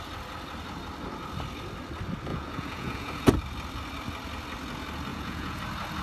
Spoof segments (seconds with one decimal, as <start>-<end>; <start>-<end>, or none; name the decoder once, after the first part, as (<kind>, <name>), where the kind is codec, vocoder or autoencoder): 2.3-3.3 (vocoder, Vocos); 5.1-5.6